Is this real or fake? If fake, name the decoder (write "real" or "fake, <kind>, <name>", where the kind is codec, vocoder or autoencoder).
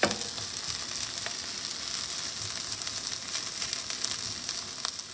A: real